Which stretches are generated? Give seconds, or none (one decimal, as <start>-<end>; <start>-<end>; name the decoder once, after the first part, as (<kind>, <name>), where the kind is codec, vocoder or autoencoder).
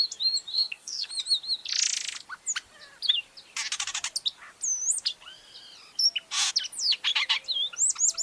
0.5-1.1 (codec, SNAC)